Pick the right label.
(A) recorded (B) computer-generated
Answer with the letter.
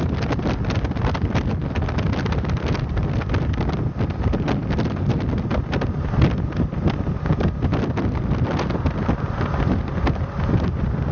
A